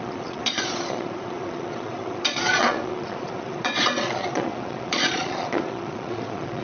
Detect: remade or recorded remade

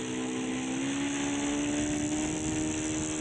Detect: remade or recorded recorded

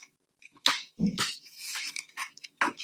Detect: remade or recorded remade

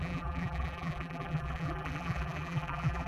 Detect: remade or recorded remade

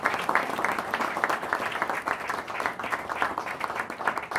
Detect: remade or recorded recorded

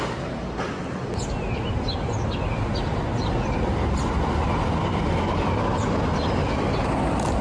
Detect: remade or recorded recorded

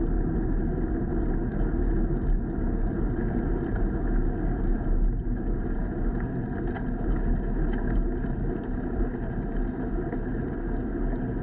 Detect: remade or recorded recorded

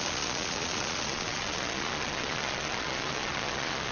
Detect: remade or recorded remade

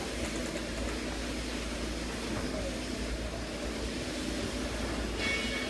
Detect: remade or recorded recorded